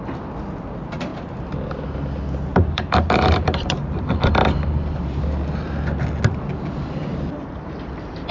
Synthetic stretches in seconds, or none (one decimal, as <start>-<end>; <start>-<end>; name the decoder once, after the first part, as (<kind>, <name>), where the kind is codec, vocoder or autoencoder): 2.5-5.2 (vocoder, BigVGAN v2)